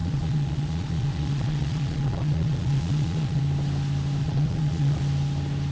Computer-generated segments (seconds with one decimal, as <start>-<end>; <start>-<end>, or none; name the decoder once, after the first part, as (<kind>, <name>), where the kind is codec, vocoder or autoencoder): 0.0-3.4 (vocoder, Vocos); 4.2-5.0